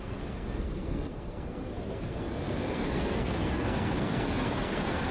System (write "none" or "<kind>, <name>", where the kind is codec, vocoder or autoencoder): codec, SNAC